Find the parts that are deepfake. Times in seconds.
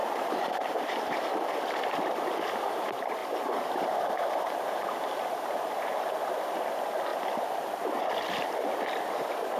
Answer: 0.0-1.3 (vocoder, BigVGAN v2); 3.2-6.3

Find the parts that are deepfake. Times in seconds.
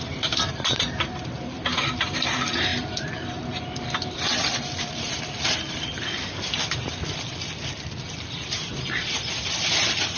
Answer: 0.0-10.2 (vocoder, BigVGAN v2)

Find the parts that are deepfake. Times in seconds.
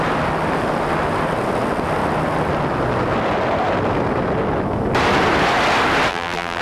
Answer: 6.1-6.6 (vocoder, BigVGAN v2)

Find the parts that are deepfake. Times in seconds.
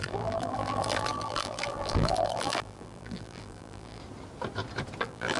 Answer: 0.0-4.0 (vocoder, BigVGAN v2); 5.0-5.4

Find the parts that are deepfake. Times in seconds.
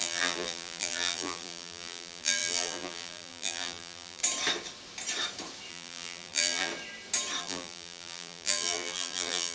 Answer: 0.0-4.2 (vocoder, BigVGAN v2); 5.7-6.7; 7.4-9.5